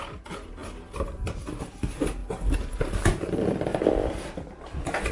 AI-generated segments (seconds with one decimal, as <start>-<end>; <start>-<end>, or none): 0.0-2.2; 3.2-5.1